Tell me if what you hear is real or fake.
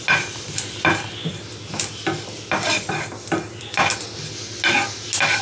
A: real